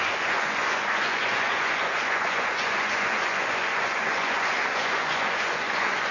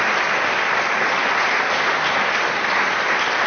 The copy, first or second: first